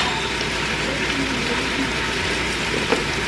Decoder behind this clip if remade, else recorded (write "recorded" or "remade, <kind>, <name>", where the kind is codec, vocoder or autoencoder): remade, vocoder, BigVGAN v2